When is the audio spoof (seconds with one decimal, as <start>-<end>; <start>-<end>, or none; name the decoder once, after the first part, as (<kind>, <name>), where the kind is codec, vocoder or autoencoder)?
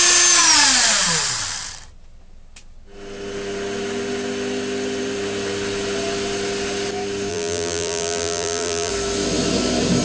7.3-8.9 (vocoder, BigVGAN v2)